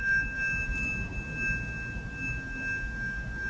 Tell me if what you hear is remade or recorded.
recorded